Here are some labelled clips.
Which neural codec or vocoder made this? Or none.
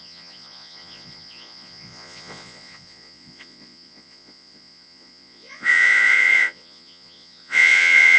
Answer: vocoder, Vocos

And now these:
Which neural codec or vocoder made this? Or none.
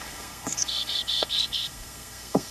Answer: codec, SNAC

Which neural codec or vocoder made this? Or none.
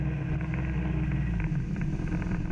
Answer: none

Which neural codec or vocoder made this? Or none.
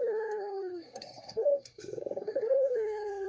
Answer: codec, SNAC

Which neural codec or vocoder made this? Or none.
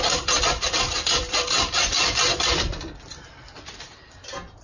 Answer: vocoder, BigVGAN v2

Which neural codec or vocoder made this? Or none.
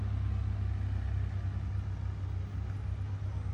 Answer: none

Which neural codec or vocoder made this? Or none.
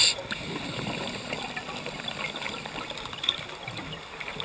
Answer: none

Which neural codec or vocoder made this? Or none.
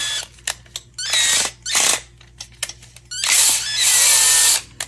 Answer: none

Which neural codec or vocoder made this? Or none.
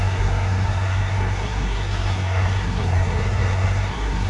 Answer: codec, SNAC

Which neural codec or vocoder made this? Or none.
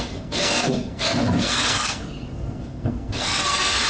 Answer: codec, SNAC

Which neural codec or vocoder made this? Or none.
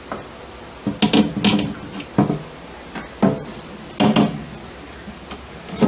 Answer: none